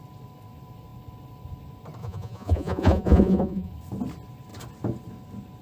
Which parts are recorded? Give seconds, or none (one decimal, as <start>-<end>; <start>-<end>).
0.0-2.0; 3.7-5.6